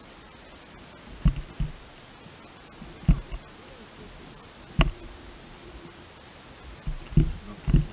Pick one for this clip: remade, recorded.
recorded